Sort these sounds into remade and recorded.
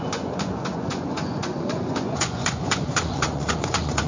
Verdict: remade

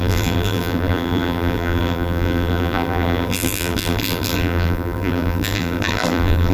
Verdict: remade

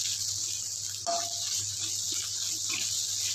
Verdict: recorded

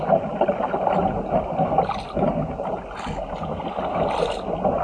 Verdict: recorded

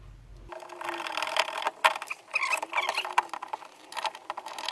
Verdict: recorded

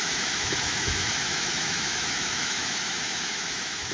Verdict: remade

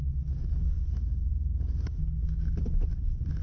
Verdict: recorded